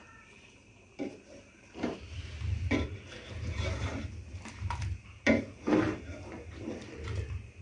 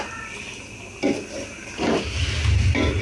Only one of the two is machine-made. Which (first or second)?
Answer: first